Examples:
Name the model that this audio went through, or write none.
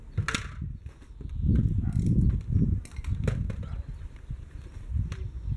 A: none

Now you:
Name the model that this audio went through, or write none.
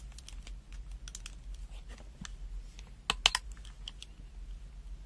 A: none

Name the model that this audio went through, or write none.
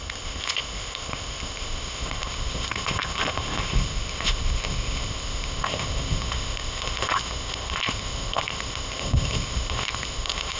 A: codec, ZipCodec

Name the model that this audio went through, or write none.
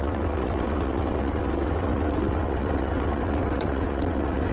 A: vocoder, WaveNeXt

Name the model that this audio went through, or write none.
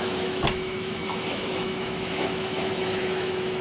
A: autoencoder, DAC-VAE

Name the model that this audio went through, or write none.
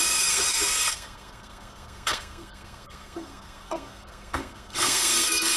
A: codec, SNAC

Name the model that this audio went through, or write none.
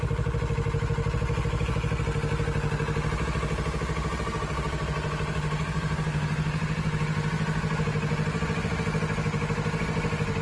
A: none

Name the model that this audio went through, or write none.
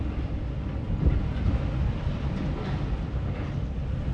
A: none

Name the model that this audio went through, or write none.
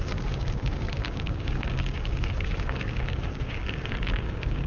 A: codec, DAC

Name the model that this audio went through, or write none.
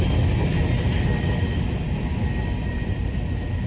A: none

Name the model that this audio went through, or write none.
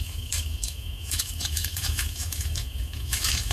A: autoencoder, DAC-VAE